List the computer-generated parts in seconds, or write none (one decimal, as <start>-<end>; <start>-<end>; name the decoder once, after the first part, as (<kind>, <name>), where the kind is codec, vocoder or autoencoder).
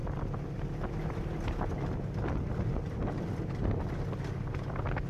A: 0.0-1.4 (vocoder, BigVGAN v2)